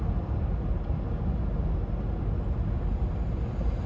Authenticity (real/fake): real